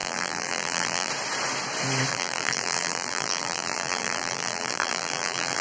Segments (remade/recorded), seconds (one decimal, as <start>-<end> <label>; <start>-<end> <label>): 0.0-1.1 remade; 1.1-2.1 recorded; 2.1-5.6 remade